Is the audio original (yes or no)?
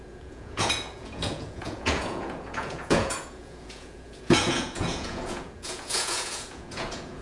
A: no